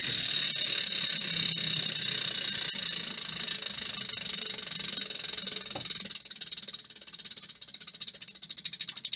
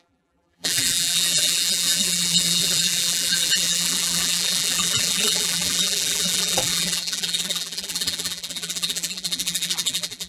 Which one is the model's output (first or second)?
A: second